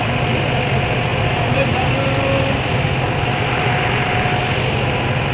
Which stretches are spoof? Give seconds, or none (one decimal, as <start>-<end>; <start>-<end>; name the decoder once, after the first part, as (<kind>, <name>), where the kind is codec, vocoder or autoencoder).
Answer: 1.1-1.9 (vocoder, BigVGAN v2)